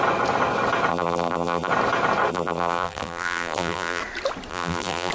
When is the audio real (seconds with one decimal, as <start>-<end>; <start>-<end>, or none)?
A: 0.0-0.9; 1.7-2.3; 4.0-4.5